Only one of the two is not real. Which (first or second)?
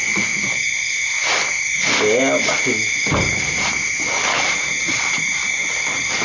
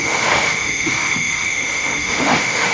second